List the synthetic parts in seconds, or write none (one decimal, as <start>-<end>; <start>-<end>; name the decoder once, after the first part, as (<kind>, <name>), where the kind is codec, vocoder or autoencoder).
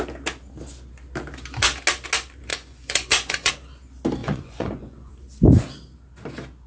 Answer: 2.5-3.5 (vocoder, Vocos); 4.2-5.1